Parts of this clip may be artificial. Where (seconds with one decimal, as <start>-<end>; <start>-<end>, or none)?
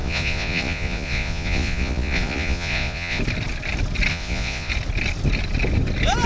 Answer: 0.0-3.2; 4.1-4.7